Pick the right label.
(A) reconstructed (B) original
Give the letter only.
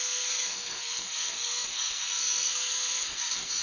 A